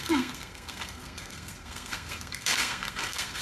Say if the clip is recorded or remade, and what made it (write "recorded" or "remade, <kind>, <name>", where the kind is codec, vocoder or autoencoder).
remade, codec, SNAC